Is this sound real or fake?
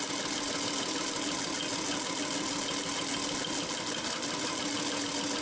real